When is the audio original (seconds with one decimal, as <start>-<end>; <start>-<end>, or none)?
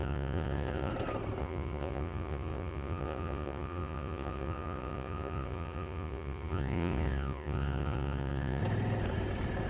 0.9-1.4; 8.6-9.7